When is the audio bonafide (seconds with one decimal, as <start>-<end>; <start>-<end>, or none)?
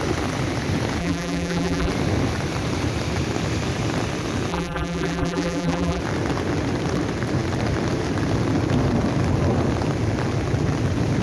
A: 0.0-1.0; 1.9-4.5; 6.0-11.2